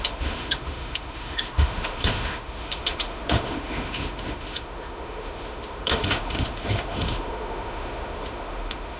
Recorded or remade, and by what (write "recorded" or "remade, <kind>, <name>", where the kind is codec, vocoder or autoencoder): remade, autoencoder, DAC-VAE